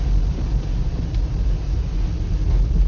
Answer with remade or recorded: recorded